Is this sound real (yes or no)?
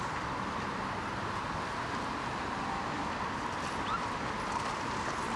no